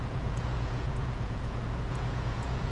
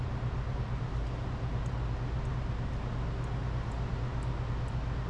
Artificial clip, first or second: first